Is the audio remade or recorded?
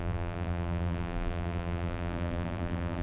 remade